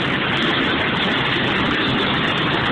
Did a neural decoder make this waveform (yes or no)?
no